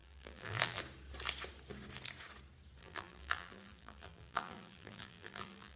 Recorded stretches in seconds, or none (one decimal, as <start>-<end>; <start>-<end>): 0.8-2.8